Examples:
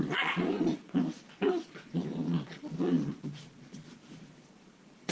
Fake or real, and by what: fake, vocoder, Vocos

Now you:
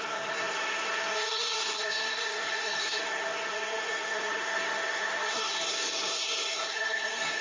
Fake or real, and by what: fake, codec, SNAC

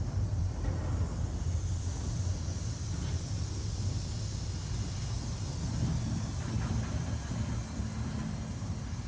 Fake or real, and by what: real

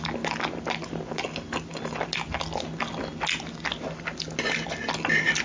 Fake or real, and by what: real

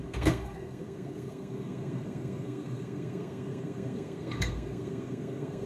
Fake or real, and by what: fake, codec, SNAC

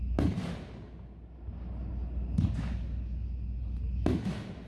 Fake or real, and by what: real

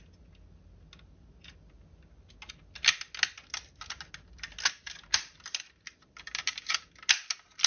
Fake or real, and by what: real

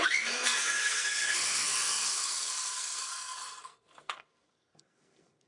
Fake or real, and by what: fake, codec, SNAC